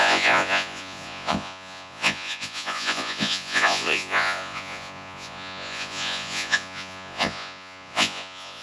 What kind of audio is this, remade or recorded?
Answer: remade